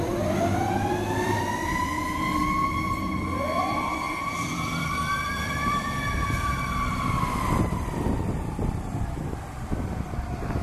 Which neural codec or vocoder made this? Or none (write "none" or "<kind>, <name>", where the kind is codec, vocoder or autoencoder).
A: vocoder, BigVGAN v2